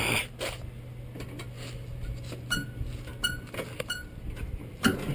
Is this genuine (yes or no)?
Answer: yes